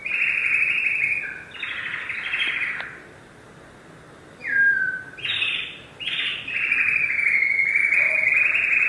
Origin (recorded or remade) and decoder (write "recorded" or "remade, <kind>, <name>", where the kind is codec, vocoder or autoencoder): recorded